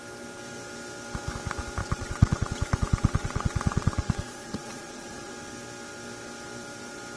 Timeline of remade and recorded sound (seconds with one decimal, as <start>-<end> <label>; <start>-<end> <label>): 0.0-1.8 recorded; 1.8-5.3 remade; 5.3-7.2 recorded